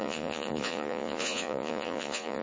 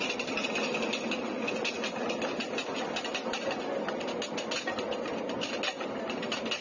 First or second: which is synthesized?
first